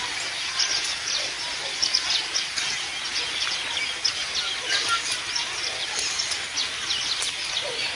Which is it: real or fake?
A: real